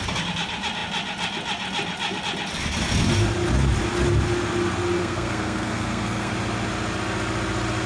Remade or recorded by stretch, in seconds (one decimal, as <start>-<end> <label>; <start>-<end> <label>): 0.0-5.0 recorded; 5.0-6.3 remade; 6.3-7.9 recorded